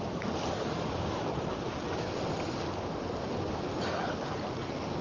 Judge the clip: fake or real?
real